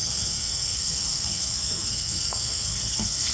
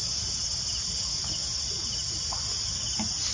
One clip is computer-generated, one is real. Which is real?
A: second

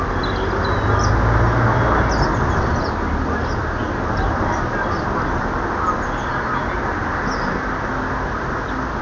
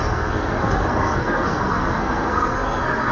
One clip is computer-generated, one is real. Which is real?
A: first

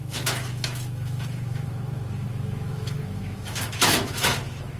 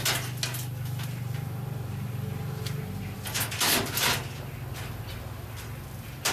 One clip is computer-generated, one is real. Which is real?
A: second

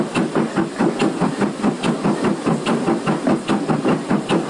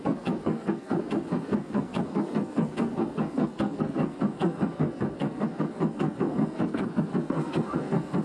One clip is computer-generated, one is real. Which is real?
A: first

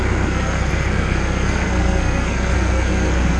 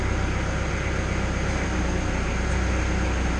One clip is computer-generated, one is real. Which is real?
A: second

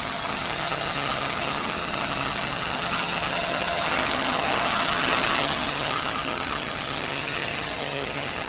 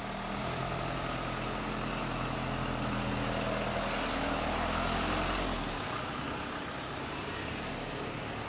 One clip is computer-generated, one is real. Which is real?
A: second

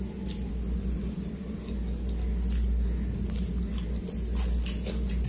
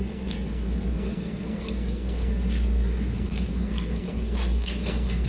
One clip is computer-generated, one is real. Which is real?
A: first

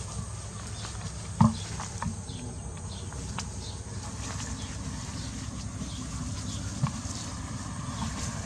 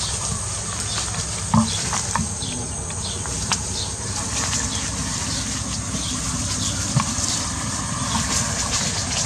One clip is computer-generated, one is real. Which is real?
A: first